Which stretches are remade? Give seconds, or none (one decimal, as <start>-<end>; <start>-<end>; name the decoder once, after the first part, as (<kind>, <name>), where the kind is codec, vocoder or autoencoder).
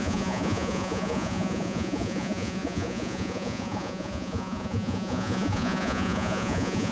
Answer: 0.0-6.9 (vocoder, Vocos)